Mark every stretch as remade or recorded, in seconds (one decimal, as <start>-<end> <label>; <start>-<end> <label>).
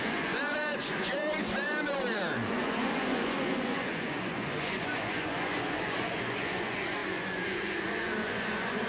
0.0-8.9 remade